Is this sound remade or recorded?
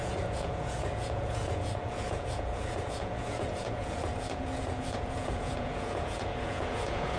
remade